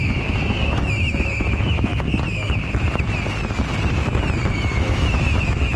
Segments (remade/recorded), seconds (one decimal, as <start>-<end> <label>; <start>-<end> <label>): 0.0-1.9 remade; 1.9-4.7 recorded; 4.7-5.8 remade